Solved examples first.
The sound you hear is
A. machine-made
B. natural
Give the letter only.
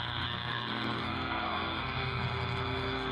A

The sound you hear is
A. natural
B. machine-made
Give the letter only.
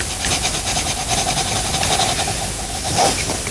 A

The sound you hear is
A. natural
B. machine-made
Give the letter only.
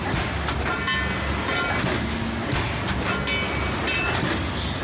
A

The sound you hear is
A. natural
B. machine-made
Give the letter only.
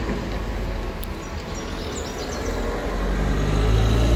A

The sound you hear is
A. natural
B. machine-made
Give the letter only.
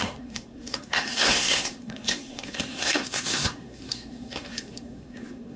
B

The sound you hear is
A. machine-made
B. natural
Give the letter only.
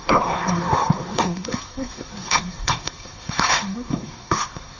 A